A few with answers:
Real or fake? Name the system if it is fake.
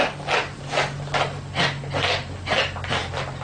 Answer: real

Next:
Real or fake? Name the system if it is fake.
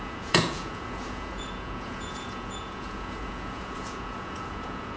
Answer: fake, vocoder, Vocos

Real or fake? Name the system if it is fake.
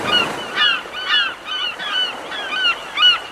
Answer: real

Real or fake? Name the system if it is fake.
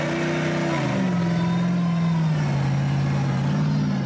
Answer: real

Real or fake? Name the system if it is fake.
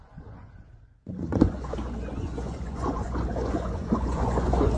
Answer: fake, vocoder, Vocos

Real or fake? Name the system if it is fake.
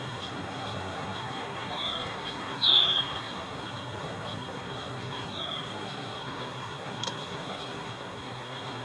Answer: fake, codec, SNAC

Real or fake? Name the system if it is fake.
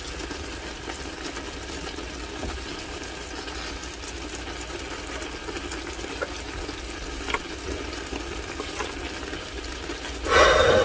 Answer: real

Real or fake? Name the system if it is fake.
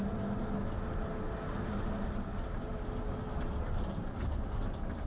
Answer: real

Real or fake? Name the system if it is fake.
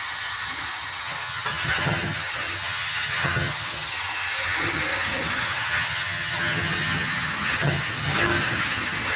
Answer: fake, vocoder, HiFi-GAN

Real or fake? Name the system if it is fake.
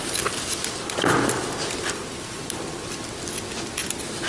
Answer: real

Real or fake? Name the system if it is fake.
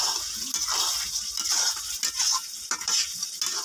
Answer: real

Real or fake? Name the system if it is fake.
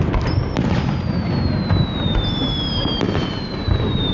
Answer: real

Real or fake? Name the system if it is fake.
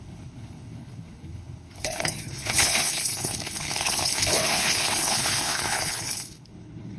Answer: fake, codec, HILCodec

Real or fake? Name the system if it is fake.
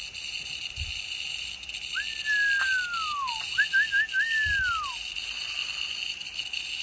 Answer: real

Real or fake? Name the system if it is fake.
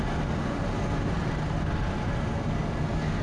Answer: real